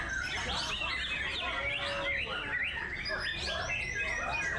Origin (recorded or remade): recorded